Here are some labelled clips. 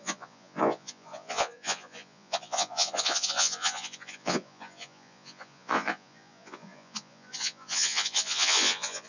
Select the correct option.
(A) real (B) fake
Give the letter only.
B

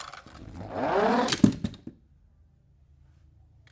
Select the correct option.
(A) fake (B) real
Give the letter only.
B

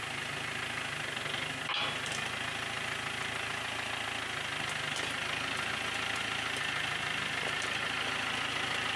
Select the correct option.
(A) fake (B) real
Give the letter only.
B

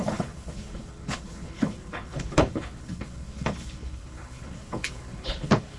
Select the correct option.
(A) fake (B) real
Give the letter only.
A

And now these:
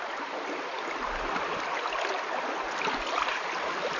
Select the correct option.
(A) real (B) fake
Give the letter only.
A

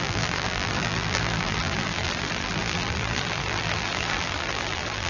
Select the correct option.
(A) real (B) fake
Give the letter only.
B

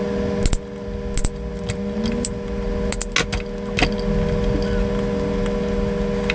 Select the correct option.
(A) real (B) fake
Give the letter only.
A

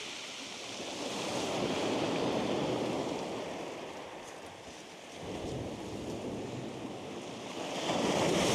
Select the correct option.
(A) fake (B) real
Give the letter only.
B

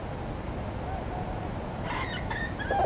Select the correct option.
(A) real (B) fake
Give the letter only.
A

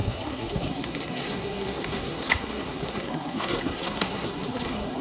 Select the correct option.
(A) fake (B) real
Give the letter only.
A